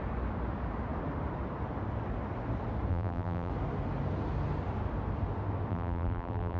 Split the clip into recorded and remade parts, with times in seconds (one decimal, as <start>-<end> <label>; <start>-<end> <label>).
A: 0.0-2.9 recorded; 2.9-3.5 remade; 3.5-5.7 recorded; 5.7-6.6 remade

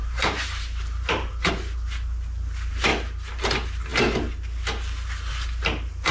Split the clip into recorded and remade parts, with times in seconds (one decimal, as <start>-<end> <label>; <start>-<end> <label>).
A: 0.0-1.5 remade; 1.5-6.1 recorded